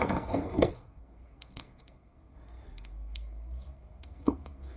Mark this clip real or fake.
fake